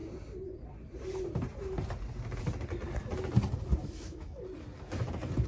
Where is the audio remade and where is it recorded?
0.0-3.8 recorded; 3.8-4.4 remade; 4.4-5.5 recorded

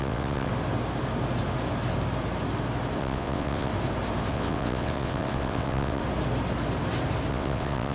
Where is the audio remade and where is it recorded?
0.0-0.5 remade; 0.5-3.0 recorded; 3.0-3.7 remade; 3.7-4.3 recorded; 4.3-6.0 remade; 6.0-7.3 recorded; 7.3-7.9 remade